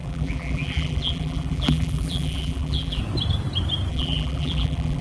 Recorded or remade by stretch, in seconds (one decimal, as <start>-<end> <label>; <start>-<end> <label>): 0.0-3.0 remade; 3.0-3.9 recorded; 3.9-5.0 remade